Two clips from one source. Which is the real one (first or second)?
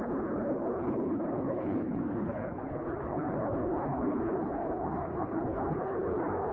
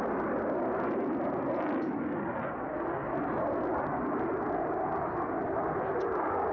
second